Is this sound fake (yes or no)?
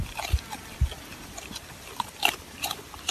yes